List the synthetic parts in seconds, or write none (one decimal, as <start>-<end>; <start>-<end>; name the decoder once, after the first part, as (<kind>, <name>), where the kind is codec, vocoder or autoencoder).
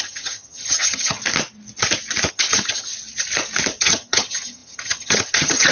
0.0-1.2 (vocoder, HiFi-GAN); 2.3-2.9; 3.8-5.7